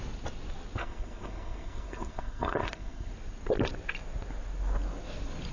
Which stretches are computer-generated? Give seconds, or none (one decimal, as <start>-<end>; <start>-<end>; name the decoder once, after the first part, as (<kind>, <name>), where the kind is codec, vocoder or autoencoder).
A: 0.8-3.1 (codec, SNAC)

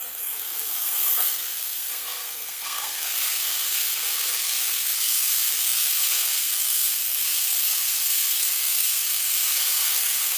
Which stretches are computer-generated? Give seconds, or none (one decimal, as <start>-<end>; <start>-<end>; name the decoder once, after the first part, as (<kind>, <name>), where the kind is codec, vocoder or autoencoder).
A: 0.0-10.4 (codec, SNAC)